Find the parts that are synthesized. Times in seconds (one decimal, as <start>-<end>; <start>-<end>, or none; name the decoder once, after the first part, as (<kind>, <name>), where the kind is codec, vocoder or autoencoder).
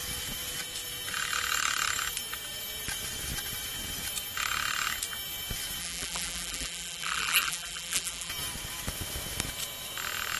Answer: 5.8-8.3 (vocoder, BigVGAN v2)